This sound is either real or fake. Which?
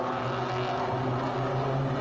real